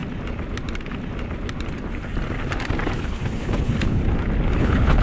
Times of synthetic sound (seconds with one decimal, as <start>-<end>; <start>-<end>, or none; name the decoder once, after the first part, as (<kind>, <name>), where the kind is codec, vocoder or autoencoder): 3.0-4.0 (codec, HILCodec); 4.6-5.0